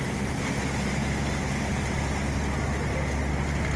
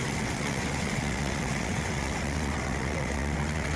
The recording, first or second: first